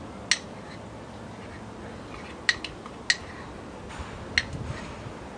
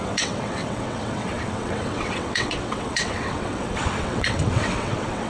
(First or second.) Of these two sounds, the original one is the first